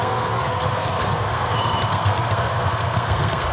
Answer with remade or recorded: remade